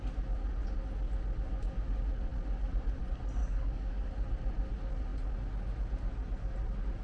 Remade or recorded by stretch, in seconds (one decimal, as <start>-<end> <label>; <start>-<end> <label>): 0.0-3.4 recorded; 3.4-4.1 remade; 4.1-7.0 recorded